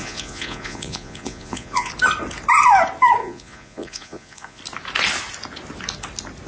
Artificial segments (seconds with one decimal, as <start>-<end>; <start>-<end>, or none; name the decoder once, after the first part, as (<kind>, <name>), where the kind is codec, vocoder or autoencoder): 0.0-1.9 (vocoder, Vocos); 3.2-4.6